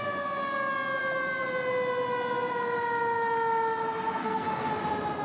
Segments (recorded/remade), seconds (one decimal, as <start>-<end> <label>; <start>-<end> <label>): 0.0-4.2 recorded; 4.2-4.7 remade; 4.7-5.2 recorded